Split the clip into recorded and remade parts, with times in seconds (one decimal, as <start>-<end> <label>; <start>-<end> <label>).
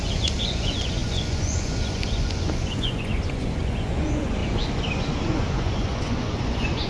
0.0-6.9 remade